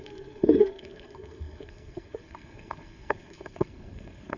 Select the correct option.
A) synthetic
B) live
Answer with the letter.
A